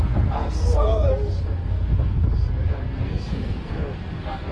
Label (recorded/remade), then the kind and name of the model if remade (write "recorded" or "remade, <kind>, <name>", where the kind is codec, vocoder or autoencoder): remade, codec, SNAC